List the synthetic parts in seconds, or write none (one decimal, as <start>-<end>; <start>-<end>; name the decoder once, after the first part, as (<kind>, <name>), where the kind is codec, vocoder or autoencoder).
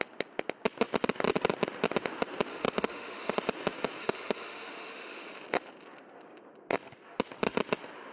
2.5-3.4 (autoencoder, DAC-VAE); 4.0-5.4